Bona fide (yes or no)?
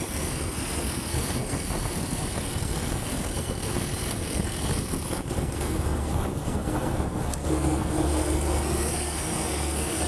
no